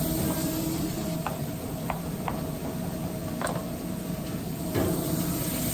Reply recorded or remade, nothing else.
remade